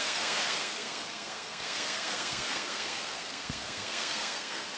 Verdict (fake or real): fake